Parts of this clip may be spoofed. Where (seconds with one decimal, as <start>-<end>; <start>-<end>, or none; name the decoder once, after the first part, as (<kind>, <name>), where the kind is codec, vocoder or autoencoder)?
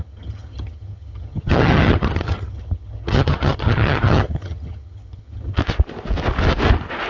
0.0-5.6 (vocoder, HiFi-GAN)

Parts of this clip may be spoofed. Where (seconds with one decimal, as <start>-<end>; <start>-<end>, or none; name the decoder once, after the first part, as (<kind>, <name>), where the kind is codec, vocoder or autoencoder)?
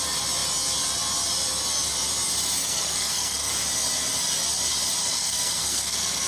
2.6-3.5 (codec, SNAC); 5.0-6.3